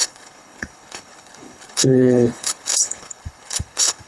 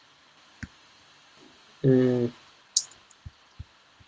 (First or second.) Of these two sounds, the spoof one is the first